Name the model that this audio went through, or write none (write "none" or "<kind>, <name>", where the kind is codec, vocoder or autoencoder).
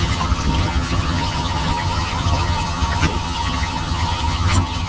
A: vocoder, HiFi-GAN